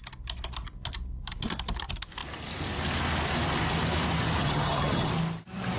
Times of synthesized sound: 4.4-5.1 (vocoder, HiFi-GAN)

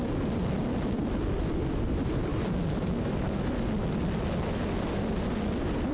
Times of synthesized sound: none